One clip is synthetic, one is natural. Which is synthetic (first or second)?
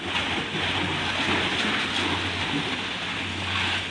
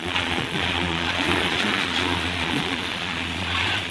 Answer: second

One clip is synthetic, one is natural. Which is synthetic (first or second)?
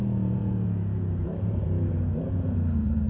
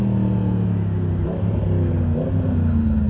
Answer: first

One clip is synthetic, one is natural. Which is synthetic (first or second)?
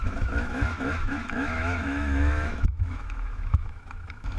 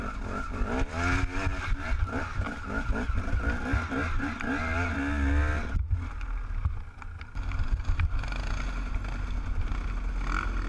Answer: first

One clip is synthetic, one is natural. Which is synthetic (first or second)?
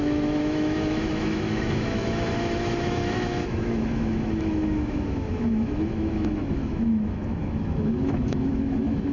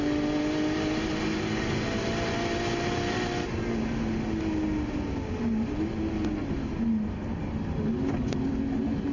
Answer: first